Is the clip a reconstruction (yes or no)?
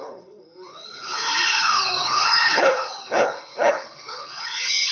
yes